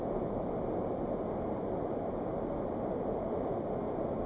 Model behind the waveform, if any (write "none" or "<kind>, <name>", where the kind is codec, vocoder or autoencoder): none